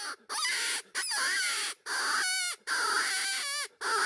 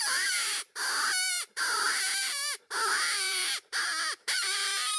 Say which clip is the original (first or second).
first